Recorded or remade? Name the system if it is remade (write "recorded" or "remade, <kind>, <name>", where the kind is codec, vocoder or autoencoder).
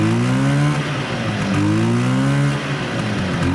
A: recorded